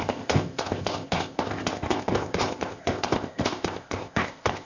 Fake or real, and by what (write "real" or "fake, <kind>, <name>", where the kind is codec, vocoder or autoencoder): fake, codec, ZipCodec